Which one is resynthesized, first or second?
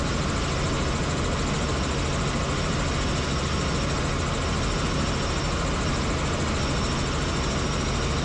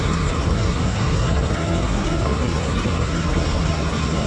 second